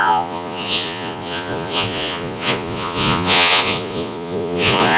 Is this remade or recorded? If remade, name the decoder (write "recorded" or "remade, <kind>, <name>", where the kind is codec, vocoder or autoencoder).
remade, vocoder, Vocos